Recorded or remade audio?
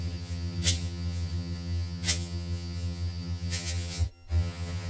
remade